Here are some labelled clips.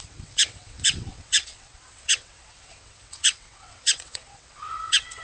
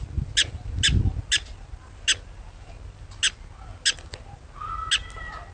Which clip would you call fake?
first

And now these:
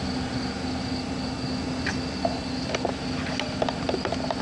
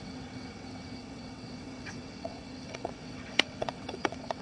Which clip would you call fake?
second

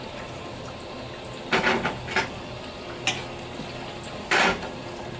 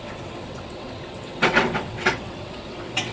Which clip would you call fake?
second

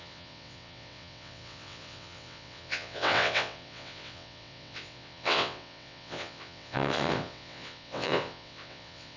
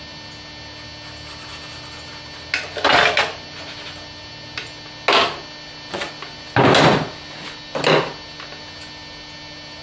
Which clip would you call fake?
first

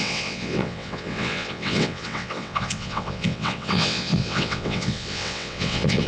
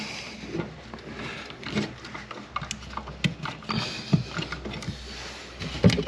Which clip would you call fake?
first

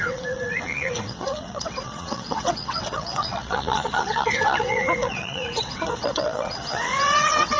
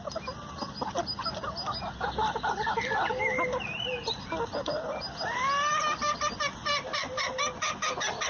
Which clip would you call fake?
first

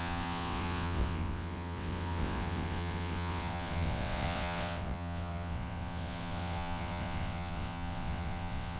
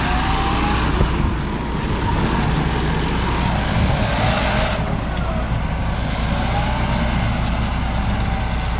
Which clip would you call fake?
first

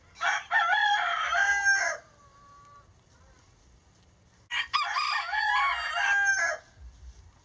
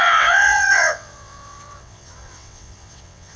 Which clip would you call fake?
second